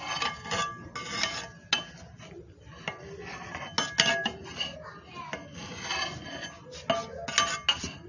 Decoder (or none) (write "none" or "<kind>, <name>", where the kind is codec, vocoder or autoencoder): none